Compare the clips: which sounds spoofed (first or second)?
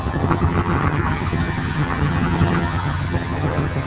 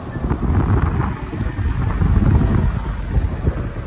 first